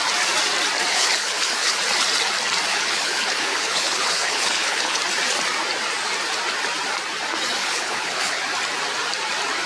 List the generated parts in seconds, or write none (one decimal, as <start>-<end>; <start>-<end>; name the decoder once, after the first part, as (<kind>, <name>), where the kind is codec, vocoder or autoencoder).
0.9-1.8 (codec, HILCodec); 2.7-5.0; 7.6-8.4